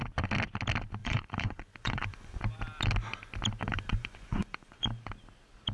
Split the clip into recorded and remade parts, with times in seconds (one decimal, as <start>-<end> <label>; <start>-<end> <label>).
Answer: 0.0-1.0 recorded; 1.0-2.4 remade; 2.4-3.6 recorded; 3.6-4.9 remade; 4.9-5.7 recorded